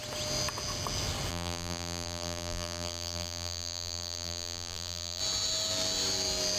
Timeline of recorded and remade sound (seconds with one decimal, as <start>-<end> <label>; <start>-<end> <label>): 0.0-1.3 recorded; 1.3-5.2 remade; 5.2-6.6 recorded